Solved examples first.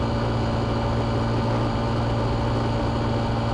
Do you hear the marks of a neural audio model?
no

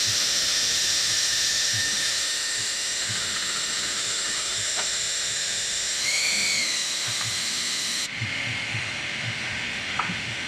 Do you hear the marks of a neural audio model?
yes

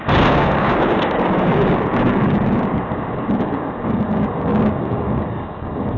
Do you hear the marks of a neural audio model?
yes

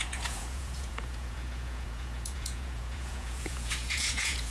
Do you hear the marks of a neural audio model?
yes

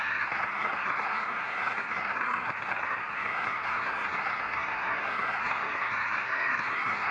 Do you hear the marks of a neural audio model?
yes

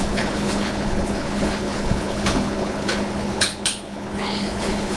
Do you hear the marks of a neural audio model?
yes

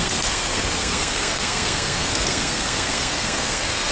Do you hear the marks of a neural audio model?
yes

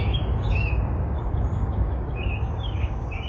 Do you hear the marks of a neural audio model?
yes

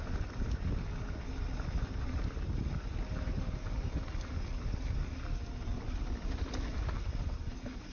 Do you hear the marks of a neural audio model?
no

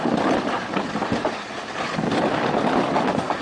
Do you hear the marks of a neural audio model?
no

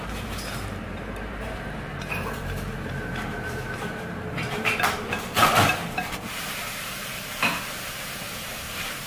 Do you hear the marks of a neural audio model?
yes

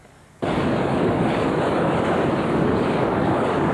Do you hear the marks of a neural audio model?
yes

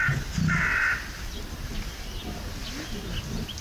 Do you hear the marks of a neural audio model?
no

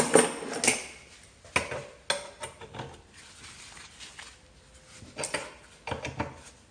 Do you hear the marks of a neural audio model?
no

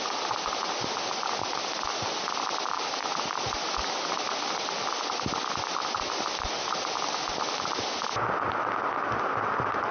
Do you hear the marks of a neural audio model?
no